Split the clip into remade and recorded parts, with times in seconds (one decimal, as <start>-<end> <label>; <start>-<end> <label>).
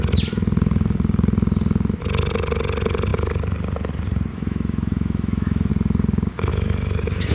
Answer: 0.0-4.3 recorded; 4.3-5.7 remade; 5.7-6.5 recorded; 6.5-7.3 remade